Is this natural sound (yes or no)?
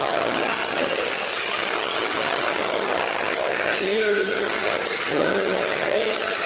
no